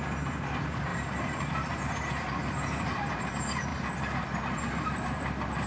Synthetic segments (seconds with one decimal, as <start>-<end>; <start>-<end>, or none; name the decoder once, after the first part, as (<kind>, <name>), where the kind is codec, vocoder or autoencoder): 0.0-5.7 (vocoder, BigVGAN v2)

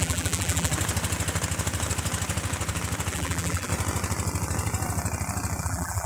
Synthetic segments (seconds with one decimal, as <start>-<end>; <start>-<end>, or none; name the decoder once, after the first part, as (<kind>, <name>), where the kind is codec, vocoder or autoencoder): 0.0-0.7 (vocoder, BigVGAN v2); 3.1-3.7; 5.6-6.1

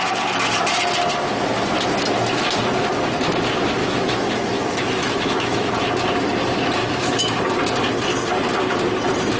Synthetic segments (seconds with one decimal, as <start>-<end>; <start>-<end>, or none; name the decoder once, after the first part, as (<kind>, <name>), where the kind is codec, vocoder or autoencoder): 3.8-5.7 (autoencoder, DAC-VAE); 6.8-7.4